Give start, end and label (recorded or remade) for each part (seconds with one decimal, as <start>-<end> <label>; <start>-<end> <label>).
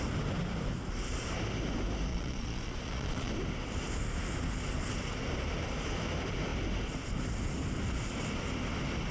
0.0-2.1 recorded; 2.1-3.3 remade; 3.3-9.1 recorded